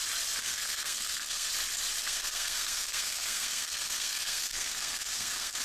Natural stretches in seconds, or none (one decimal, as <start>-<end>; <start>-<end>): 0.0-0.4; 1.5-2.0